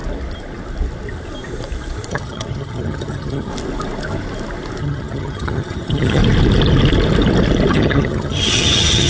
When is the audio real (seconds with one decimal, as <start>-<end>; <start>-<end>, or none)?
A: 0.0-2.1; 3.5-4.8; 6.2-7.7